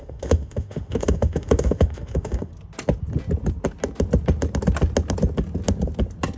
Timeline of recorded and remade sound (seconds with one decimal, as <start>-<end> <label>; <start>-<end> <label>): 0.0-2.5 remade; 2.5-6.4 recorded